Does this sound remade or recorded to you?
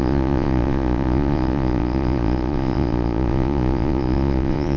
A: remade